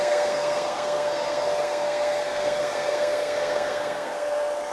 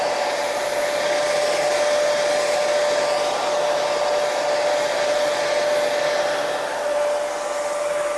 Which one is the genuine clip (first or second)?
second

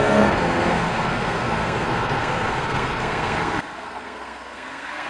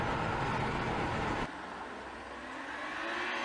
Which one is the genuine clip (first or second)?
second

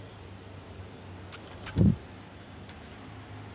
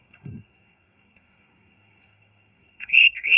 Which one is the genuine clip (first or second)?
first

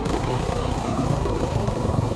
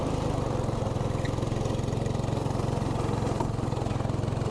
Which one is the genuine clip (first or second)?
second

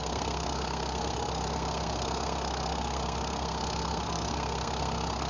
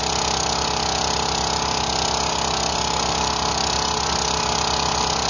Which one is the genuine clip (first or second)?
second